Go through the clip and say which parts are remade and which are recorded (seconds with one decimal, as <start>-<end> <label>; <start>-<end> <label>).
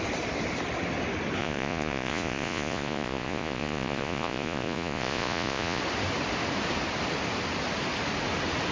0.0-1.4 recorded; 1.4-5.8 remade; 5.8-8.7 recorded